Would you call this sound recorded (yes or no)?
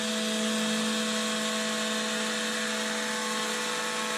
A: yes